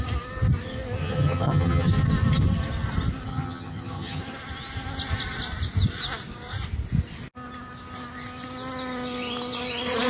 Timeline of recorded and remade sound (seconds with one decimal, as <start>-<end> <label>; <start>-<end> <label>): 0.0-1.0 recorded; 1.0-1.9 remade; 1.9-3.3 recorded; 3.3-4.2 remade; 4.2-10.1 recorded